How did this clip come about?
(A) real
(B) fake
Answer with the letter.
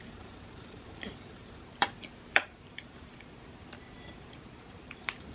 B